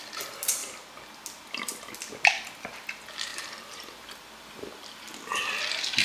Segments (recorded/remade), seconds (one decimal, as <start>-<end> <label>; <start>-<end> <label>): 0.0-3.3 recorded; 3.3-5.6 remade; 5.6-6.0 recorded